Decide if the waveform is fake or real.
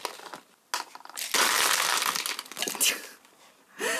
real